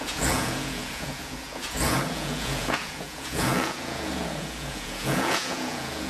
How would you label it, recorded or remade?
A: remade